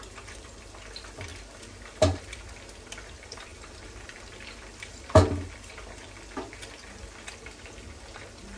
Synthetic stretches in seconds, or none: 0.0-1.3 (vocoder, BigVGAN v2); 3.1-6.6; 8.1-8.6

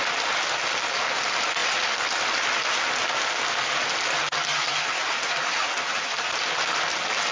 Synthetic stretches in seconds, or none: 1.6-6.0 (vocoder, BigVGAN v2)